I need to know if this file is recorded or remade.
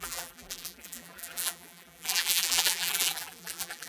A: remade